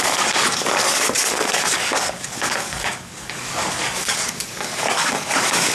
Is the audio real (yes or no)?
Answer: no